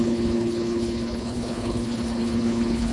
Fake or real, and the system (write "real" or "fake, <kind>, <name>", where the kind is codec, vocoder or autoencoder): fake, codec, HILCodec